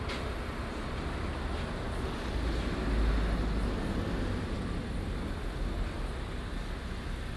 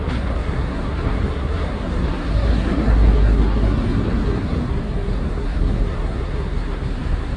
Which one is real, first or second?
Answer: first